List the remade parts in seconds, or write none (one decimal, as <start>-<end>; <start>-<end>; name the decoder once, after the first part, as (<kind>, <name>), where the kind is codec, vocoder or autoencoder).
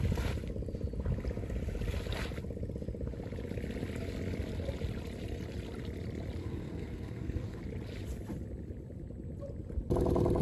6.4-7.6 (codec, SNAC)